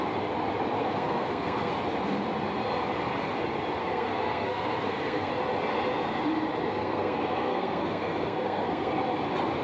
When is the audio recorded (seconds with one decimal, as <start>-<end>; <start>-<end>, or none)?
0.0-0.8; 1.7-3.8; 5.3-6.7; 8.9-9.6

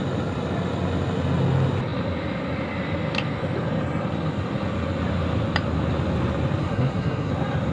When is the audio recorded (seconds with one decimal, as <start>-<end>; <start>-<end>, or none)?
0.0-6.6; 7.3-7.7

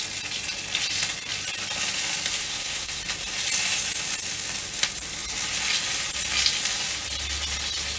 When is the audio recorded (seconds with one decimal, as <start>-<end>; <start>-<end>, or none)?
0.0-2.4; 3.0-8.0

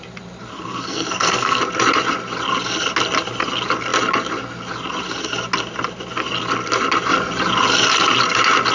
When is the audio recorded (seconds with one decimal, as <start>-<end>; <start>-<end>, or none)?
0.0-0.5; 1.6-8.7

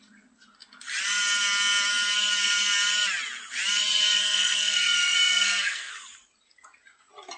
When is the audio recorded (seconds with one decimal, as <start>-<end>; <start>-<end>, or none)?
0.0-4.2; 5.9-7.4

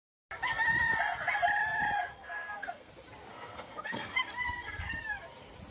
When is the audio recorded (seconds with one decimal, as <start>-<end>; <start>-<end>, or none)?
0.0-2.1; 2.9-3.3; 5.0-5.7